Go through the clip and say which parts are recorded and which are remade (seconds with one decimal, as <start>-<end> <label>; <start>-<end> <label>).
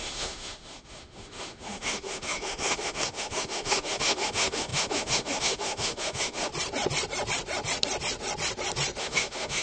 0.0-6.5 remade; 6.5-9.0 recorded; 9.0-9.6 remade